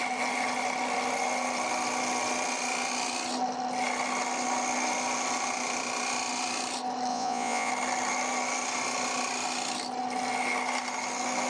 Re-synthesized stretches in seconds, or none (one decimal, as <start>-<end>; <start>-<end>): 7.1-7.7